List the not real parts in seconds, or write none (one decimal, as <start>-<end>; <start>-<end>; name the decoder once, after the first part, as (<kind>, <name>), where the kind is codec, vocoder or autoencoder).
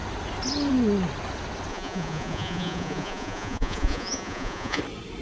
1.7-4.8 (vocoder, Vocos)